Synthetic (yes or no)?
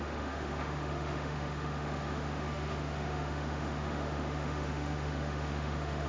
yes